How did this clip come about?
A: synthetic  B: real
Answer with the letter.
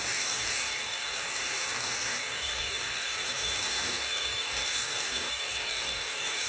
A